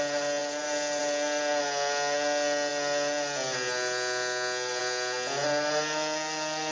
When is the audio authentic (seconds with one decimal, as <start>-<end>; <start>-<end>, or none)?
0.0-6.7